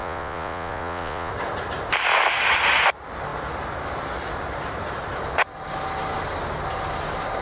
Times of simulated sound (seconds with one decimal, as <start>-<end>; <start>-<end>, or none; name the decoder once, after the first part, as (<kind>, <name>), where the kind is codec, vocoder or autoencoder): 0.0-1.3 (vocoder, Vocos)